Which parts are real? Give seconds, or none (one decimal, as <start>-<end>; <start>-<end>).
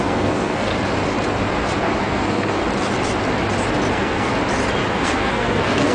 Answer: 0.7-2.0; 2.6-3.9; 4.3-4.9